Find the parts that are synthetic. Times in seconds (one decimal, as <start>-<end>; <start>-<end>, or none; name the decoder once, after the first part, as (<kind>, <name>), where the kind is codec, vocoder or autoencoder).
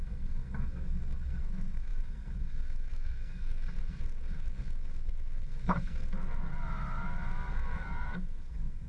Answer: 0.0-6.5 (codec, SNAC); 7.5-8.9